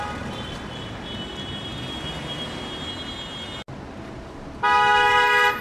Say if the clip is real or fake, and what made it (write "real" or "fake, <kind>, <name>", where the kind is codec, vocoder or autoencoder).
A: real